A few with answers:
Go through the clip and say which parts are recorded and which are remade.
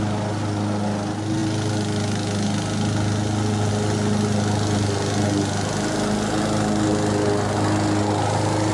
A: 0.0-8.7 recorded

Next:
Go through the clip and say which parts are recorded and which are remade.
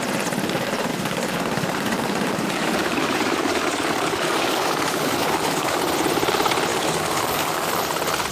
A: 0.0-0.9 recorded; 0.9-5.8 remade; 5.8-6.7 recorded; 6.7-7.7 remade; 7.7-8.3 recorded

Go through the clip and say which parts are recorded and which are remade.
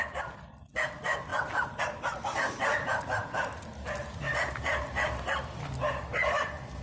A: 0.0-6.8 recorded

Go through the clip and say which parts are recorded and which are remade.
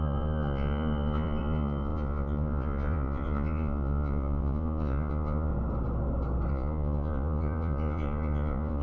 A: 0.0-5.5 remade; 5.5-6.5 recorded; 6.5-8.8 remade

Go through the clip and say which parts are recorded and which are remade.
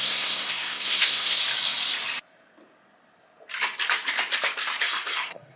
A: 0.0-1.4 remade; 1.4-4.8 recorded; 4.8-5.6 remade